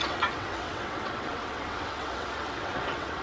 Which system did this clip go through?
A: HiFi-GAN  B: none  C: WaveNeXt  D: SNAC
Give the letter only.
C